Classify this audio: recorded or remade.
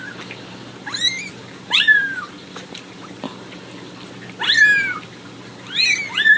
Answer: recorded